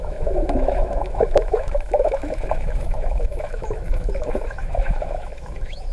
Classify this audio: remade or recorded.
remade